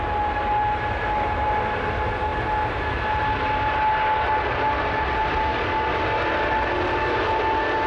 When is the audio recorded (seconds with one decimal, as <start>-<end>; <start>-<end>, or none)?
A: 0.0-7.9